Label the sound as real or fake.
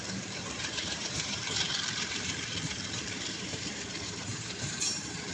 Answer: fake